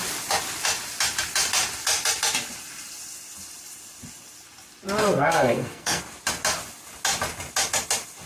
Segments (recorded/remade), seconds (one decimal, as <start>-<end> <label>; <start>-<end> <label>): 0.0-5.0 recorded; 5.0-6.0 remade; 6.0-8.3 recorded